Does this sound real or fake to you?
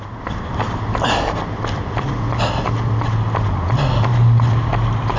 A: real